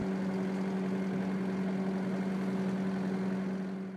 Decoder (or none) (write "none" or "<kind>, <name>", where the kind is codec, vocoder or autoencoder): none